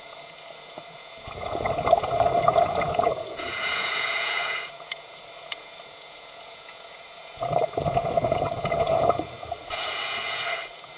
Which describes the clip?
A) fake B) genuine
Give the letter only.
A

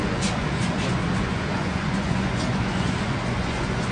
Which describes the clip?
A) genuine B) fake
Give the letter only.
B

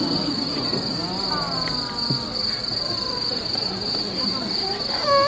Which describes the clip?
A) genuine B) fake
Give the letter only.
A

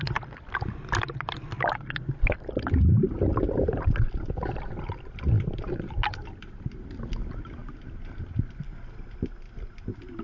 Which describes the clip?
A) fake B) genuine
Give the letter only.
B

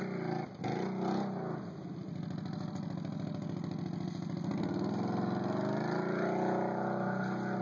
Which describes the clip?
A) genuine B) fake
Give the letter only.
A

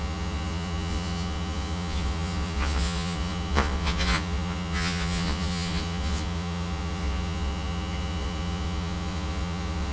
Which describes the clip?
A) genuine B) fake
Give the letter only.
B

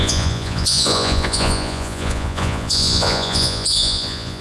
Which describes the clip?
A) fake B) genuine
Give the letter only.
A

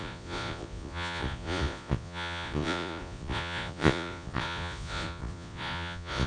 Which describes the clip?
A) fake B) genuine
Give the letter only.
A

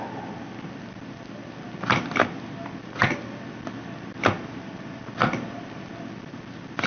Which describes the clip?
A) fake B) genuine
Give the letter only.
B